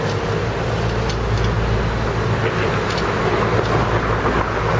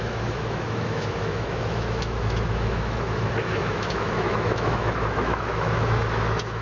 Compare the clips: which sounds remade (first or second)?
second